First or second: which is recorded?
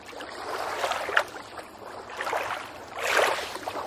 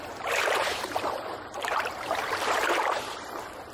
first